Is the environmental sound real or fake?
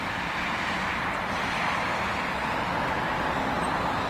real